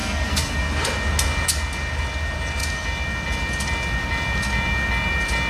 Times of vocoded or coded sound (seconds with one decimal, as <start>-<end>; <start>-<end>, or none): 0.0-0.6